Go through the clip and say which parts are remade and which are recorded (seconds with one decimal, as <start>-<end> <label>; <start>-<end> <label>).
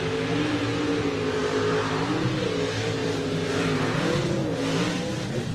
0.0-1.4 recorded; 1.4-2.3 remade; 2.3-3.0 recorded; 3.0-3.5 remade; 3.5-4.4 recorded; 4.4-5.1 remade; 5.1-5.5 recorded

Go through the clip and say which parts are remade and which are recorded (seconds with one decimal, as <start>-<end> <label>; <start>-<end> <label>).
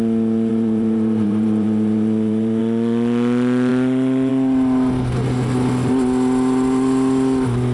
0.0-0.5 recorded; 0.5-2.6 remade; 2.6-7.7 recorded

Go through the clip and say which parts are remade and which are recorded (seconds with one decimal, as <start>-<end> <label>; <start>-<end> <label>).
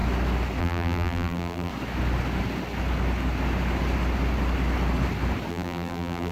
0.0-0.6 recorded; 0.6-1.7 remade; 1.7-5.5 recorded; 5.5-6.3 remade